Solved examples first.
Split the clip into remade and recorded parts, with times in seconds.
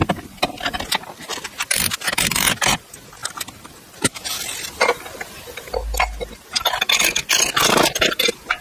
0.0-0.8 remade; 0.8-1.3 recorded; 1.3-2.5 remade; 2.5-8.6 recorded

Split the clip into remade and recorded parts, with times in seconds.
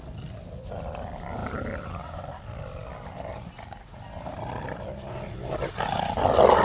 0.0-6.6 recorded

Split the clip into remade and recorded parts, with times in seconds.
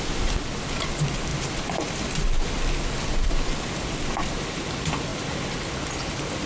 0.0-6.5 recorded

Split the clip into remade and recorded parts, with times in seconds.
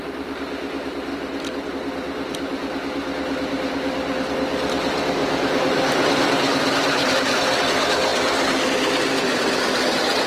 0.0-5.2 recorded; 5.2-7.3 remade; 7.3-10.3 recorded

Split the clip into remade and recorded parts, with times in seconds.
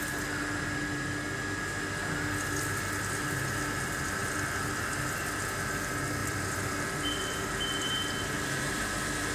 0.0-6.2 recorded; 6.2-8.0 remade; 8.0-9.3 recorded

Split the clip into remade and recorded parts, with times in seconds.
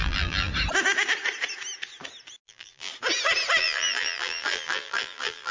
0.0-0.5 remade; 0.5-2.4 recorded; 2.4-2.9 remade; 2.9-3.6 recorded; 3.6-5.5 remade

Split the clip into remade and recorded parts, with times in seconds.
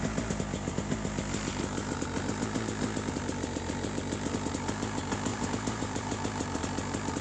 0.0-5.3 recorded; 5.3-6.2 remade; 6.2-7.2 recorded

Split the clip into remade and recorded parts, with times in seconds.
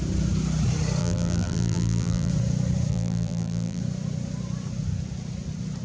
0.0-1.0 recorded; 1.0-2.3 remade; 2.3-2.9 recorded; 2.9-3.8 remade; 3.8-5.8 recorded